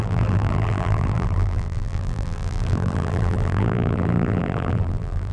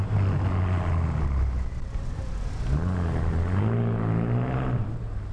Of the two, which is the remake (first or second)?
first